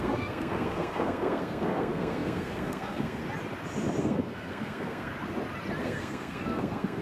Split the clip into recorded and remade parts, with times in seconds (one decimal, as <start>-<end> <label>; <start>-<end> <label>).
0.0-3.2 remade; 3.2-4.0 recorded; 4.0-5.1 remade; 5.1-5.8 recorded; 5.8-7.0 remade